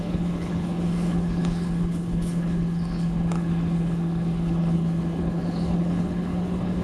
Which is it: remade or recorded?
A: remade